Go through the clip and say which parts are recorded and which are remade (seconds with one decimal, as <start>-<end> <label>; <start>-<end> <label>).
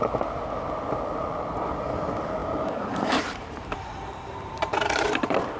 0.0-2.4 recorded; 2.4-5.6 remade